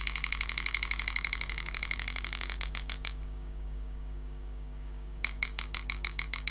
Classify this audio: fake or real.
fake